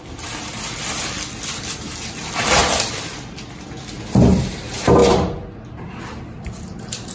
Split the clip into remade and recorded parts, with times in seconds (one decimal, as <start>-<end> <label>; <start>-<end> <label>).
0.0-2.6 recorded; 2.6-4.0 remade; 4.0-7.1 recorded